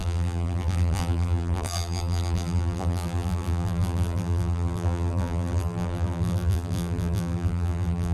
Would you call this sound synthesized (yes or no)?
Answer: yes